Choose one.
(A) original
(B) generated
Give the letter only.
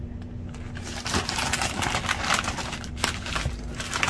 A